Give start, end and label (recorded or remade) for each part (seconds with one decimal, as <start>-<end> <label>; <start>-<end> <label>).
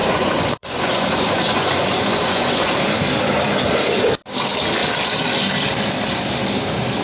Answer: 0.0-2.7 remade; 2.7-7.0 recorded